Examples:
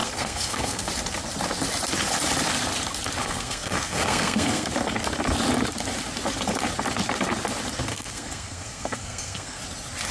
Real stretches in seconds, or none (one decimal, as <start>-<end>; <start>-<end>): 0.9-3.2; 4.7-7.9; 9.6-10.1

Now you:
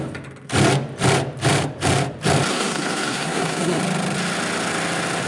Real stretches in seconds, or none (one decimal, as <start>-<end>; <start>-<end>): 0.0-2.5; 3.8-5.3

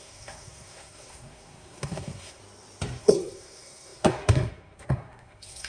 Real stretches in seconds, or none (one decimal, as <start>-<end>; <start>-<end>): 2.4-3.0

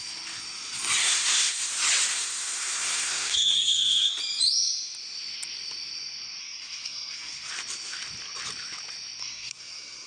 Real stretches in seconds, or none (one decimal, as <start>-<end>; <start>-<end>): 0.0-1.0; 1.7-2.1; 4.1-6.4; 7.5-9.2

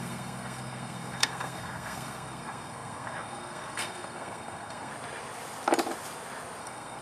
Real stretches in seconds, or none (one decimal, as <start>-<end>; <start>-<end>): 4.9-6.6

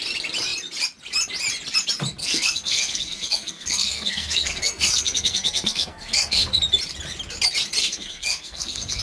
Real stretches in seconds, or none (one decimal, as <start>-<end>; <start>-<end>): 0.0-2.2; 6.6-7.8